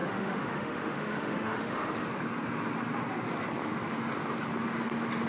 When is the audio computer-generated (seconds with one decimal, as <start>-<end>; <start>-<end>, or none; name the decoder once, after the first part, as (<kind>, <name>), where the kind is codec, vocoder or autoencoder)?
0.0-2.0 (autoencoder, DAC-VAE)